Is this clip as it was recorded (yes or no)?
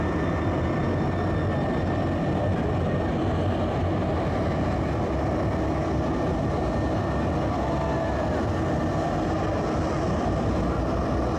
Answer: yes